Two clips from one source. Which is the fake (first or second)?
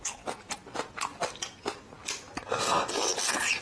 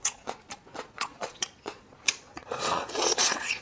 second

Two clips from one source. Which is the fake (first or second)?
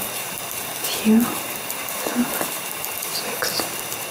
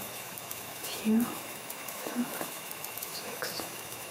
second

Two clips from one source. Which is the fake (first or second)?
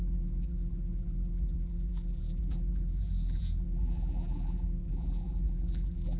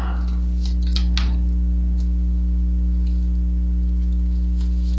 first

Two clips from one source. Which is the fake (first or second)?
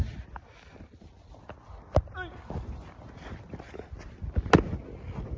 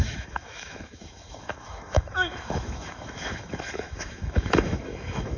second